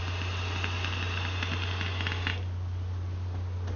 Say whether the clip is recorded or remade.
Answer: recorded